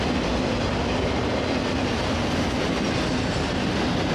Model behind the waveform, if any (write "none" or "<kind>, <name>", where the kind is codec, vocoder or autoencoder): none